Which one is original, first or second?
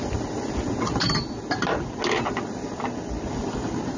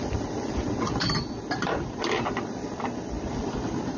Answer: first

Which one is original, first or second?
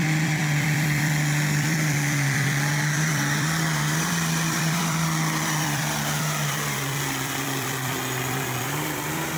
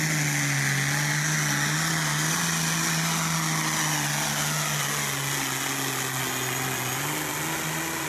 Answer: second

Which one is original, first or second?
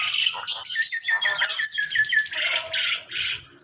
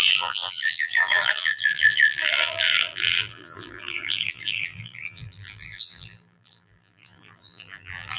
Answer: first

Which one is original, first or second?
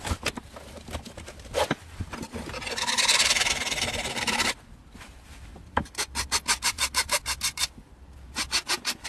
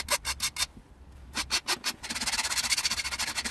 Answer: second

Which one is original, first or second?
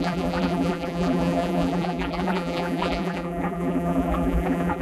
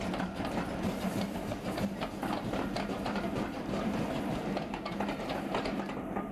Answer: second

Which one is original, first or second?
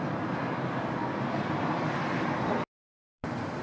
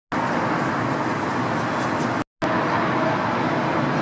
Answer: second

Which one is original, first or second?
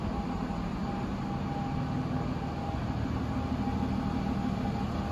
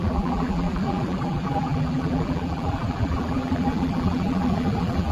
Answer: first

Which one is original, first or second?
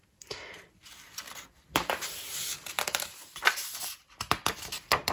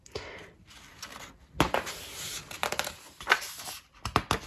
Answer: second